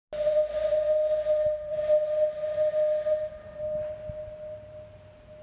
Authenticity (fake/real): real